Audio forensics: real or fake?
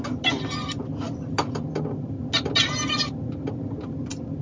real